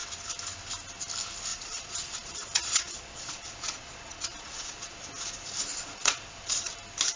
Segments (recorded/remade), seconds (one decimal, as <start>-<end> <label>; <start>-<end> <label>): 0.0-1.5 recorded; 1.5-5.0 remade; 5.0-5.7 recorded; 5.7-6.7 remade; 6.7-7.2 recorded